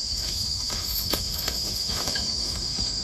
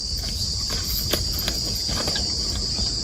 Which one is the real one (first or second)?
second